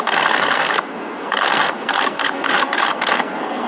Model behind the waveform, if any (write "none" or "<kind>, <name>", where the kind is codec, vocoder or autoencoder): codec, SNAC